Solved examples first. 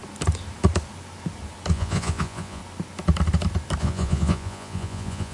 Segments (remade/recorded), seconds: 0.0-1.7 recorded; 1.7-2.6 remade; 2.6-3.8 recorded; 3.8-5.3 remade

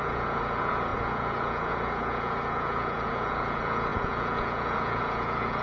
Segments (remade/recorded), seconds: 0.0-5.6 remade

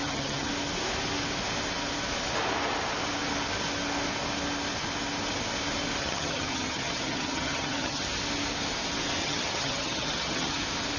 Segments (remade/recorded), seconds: 0.0-0.5 remade; 0.5-6.0 recorded; 6.0-8.0 remade; 8.0-9.2 recorded; 9.2-10.6 remade; 10.6-11.0 recorded